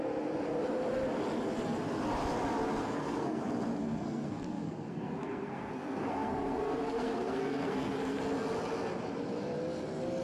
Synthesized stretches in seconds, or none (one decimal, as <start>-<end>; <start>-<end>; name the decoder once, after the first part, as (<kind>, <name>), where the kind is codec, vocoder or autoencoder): 2.8-3.4 (codec, SNAC); 3.8-8.2